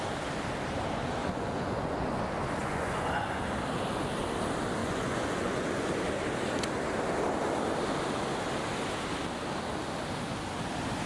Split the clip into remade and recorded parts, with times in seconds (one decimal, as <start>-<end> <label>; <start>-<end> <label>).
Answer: 0.0-1.2 recorded; 1.2-2.2 remade; 2.2-2.6 recorded; 2.6-3.4 remade; 3.4-4.8 recorded; 4.8-5.9 remade; 5.9-11.1 recorded

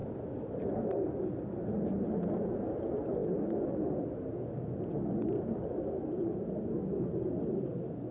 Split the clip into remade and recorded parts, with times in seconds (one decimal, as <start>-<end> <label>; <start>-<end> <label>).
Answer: 0.0-8.1 recorded